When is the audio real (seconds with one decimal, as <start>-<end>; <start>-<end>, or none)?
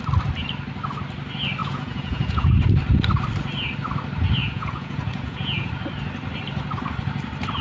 0.0-1.6; 2.6-4.4; 5.7-7.6